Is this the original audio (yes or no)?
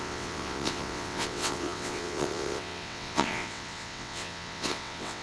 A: no